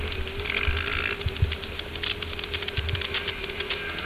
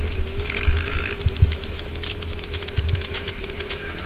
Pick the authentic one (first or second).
first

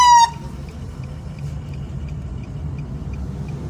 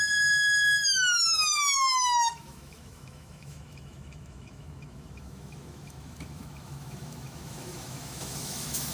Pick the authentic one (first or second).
first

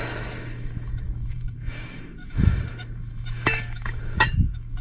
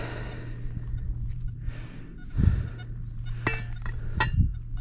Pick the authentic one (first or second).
second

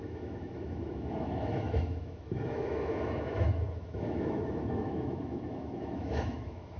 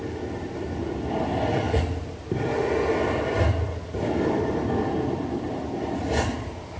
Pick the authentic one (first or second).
second